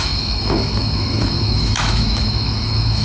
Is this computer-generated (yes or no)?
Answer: yes